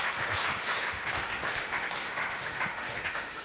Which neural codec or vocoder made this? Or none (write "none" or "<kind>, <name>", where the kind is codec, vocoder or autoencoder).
autoencoder, DAC-VAE